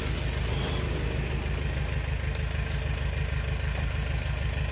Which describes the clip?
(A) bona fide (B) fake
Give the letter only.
A